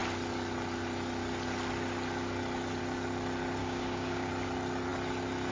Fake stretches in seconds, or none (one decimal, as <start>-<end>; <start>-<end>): 3.6-4.3